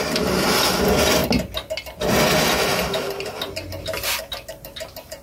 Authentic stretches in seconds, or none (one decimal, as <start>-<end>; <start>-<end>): 1.2-4.2